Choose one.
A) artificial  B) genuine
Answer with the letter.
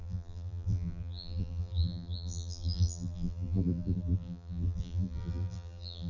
A